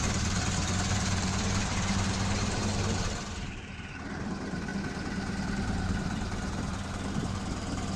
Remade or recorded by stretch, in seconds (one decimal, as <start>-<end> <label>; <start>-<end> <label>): 0.0-2.6 remade; 2.6-3.3 recorded; 3.3-4.7 remade; 4.7-5.5 recorded; 5.5-6.7 remade; 6.7-7.2 recorded; 7.2-8.0 remade